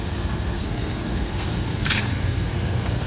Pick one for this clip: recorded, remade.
remade